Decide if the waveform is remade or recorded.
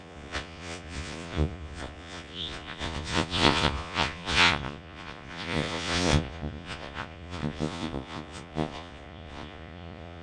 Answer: remade